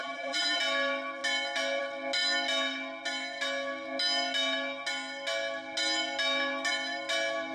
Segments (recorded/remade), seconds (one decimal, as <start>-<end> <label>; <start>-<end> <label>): 0.0-0.6 remade; 0.6-7.5 recorded